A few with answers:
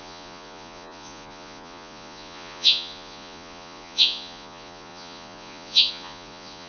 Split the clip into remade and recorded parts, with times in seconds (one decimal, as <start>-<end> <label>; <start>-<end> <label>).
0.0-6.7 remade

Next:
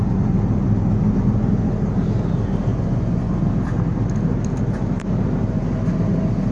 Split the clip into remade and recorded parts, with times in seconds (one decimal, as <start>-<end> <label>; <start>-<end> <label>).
0.0-2.7 recorded; 2.7-3.3 remade; 3.3-6.5 recorded

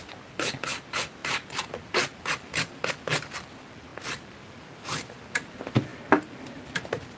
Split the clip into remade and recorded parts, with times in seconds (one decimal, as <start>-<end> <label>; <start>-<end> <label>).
0.0-7.2 recorded

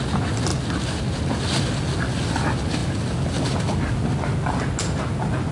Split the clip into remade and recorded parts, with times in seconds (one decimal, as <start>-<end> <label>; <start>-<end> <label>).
0.0-5.5 recorded

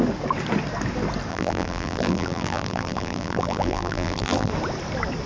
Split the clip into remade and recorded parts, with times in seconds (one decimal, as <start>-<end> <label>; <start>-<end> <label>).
0.0-1.3 recorded; 1.3-4.5 remade; 4.5-5.3 recorded

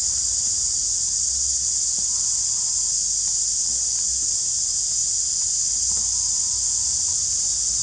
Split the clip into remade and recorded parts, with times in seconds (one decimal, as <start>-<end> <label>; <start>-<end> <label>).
0.0-7.8 recorded

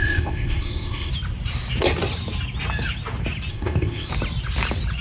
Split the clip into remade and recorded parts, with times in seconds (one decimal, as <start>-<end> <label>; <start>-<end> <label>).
0.0-1.1 remade; 1.1-3.5 recorded; 3.5-4.1 remade; 4.1-5.0 recorded

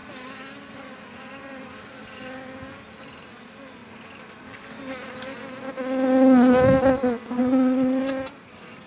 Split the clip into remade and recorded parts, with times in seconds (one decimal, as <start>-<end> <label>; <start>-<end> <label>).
0.0-7.4 recorded; 7.4-8.0 remade; 8.0-8.9 recorded